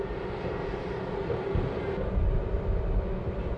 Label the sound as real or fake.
real